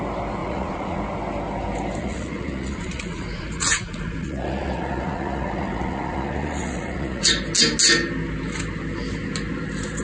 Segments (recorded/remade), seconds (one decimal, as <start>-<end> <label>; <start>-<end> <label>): 0.0-0.4 recorded; 0.4-1.0 remade; 1.0-2.0 recorded; 2.0-7.2 remade; 7.2-10.0 recorded